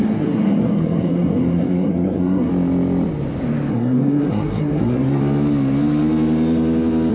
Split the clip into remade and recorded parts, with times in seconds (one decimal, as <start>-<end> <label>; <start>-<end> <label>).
0.0-2.5 remade; 2.5-3.7 recorded; 3.7-5.2 remade; 5.2-7.1 recorded